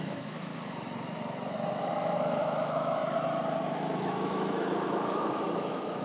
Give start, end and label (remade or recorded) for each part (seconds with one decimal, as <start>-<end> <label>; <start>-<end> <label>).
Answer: 0.0-0.5 remade; 0.5-1.8 recorded; 1.8-3.0 remade; 3.0-3.7 recorded; 3.7-6.0 remade